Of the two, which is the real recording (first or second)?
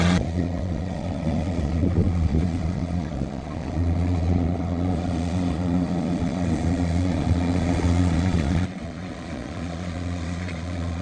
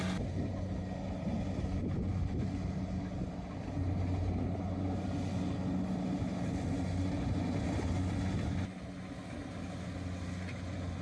second